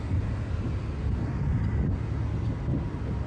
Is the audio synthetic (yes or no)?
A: no